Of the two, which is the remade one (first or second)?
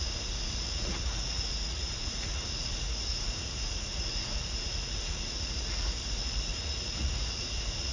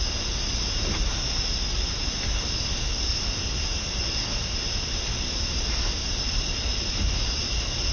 first